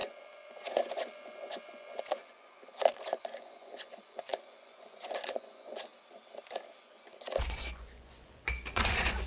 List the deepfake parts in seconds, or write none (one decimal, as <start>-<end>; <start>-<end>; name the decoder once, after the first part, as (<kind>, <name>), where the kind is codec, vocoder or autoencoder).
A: 0.0-5.9 (vocoder, Vocos); 6.8-9.3